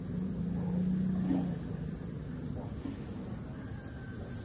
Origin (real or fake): real